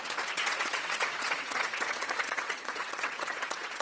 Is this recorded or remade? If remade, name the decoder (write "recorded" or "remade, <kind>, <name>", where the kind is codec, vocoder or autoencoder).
remade, vocoder, WaveNeXt